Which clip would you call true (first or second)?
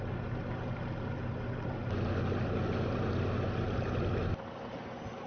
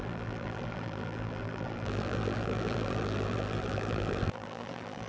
first